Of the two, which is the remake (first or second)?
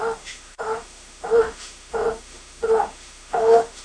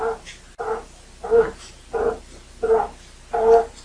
first